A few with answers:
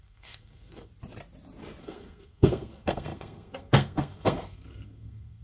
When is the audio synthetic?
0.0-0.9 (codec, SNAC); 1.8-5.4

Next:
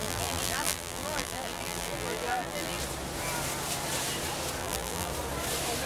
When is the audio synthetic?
0.0-2.8 (vocoder, BigVGAN v2); 4.6-5.1

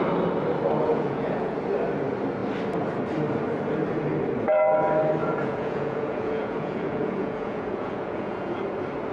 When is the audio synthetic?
0.9-1.6 (vocoder, Vocos); 5.2-8.6

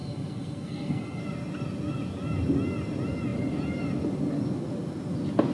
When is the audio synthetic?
0.0-1.2 (codec, SNAC)